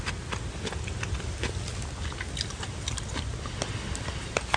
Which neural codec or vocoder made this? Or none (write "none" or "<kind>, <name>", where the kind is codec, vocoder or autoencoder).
none